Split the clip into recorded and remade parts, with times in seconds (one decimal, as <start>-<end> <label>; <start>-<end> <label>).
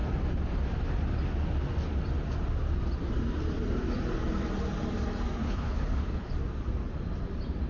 0.0-5.4 recorded; 5.4-6.3 remade; 6.3-7.7 recorded